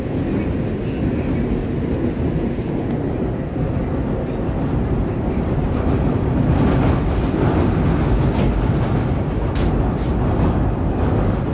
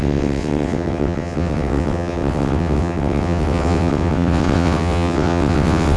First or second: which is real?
first